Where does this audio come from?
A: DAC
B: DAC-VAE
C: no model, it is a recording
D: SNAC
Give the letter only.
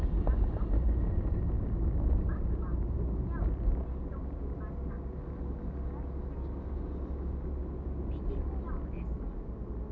C